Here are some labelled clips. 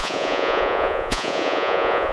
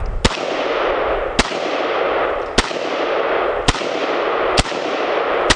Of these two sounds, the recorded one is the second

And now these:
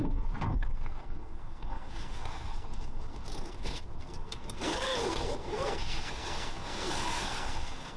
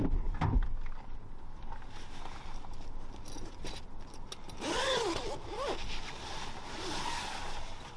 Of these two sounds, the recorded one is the second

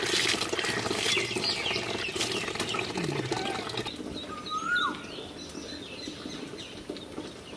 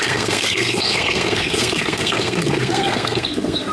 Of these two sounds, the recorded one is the first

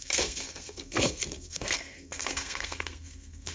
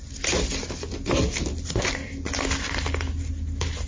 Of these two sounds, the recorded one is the second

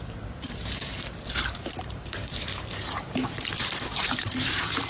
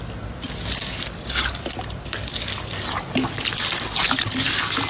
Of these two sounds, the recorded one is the second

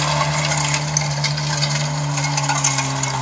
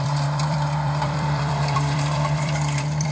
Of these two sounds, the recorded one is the first